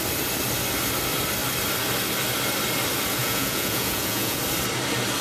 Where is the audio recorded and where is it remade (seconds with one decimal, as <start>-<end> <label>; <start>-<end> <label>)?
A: 0.0-3.2 recorded; 3.2-4.4 remade; 4.4-5.2 recorded